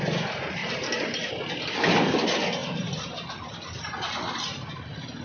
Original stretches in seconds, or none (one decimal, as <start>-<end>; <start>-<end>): 0.0-0.6; 1.3-2.6; 4.7-5.2